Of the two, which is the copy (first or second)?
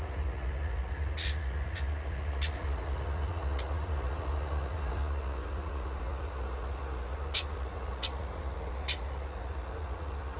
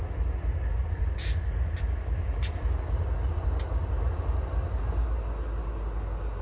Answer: first